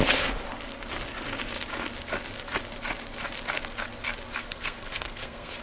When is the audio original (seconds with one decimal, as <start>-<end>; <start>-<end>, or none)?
0.0-4.4